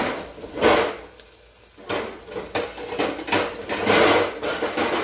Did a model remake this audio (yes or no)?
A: no